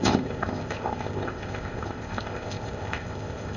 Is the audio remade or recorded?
remade